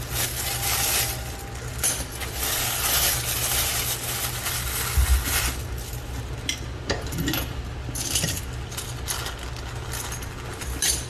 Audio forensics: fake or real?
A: real